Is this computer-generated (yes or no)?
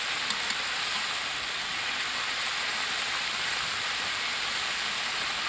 no